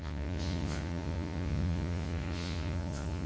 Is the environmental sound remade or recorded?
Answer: remade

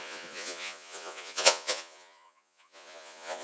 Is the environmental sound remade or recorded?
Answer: remade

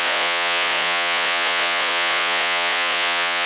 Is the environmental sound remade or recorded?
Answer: remade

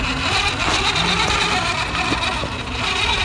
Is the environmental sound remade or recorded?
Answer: recorded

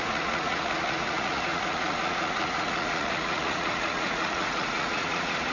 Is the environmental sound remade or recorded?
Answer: remade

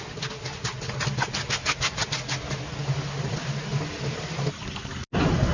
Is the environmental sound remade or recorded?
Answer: recorded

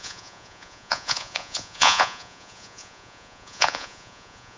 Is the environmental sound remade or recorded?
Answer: remade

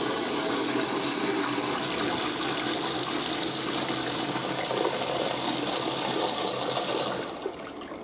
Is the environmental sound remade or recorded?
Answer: recorded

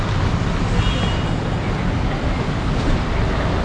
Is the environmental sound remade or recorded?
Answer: recorded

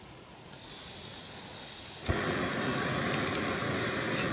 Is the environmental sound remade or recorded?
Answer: remade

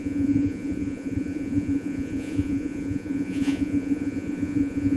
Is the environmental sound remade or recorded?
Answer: remade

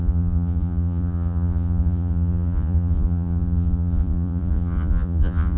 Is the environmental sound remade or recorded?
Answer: remade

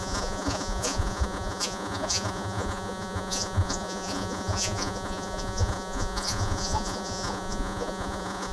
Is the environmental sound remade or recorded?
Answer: remade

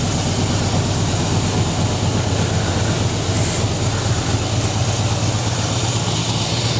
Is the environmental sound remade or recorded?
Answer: recorded